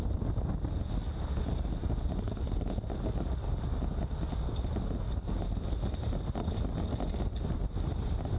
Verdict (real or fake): real